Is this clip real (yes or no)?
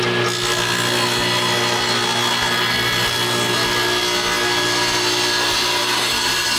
yes